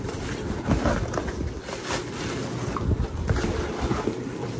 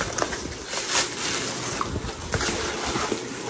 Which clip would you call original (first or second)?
second